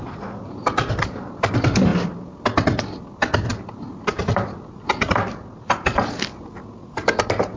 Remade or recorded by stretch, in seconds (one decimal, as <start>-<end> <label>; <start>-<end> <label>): 0.0-7.6 recorded